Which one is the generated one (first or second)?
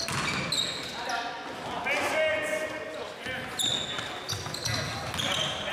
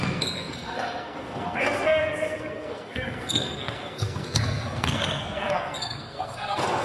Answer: second